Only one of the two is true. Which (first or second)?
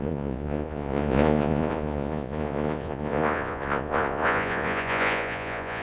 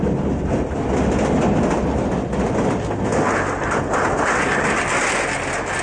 second